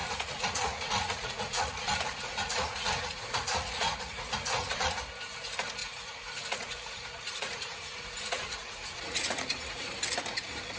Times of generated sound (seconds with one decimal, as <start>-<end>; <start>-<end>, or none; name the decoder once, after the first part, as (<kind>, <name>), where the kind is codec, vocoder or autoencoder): 0.0-5.0 (vocoder, Vocos); 5.8-9.8